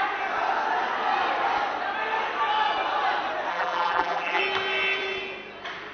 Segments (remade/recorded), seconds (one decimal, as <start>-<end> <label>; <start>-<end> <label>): 0.0-3.5 recorded; 3.5-4.4 remade; 4.4-5.9 recorded